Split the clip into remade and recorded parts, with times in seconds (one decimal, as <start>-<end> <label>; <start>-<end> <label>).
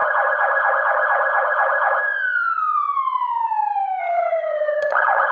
0.0-2.0 remade; 2.0-4.0 recorded; 4.0-5.3 remade